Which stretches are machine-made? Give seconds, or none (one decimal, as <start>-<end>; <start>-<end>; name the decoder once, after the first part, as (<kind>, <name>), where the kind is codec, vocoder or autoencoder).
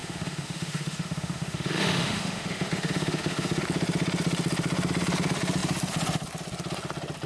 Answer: 0.0-3.6 (autoencoder, DAC-VAE)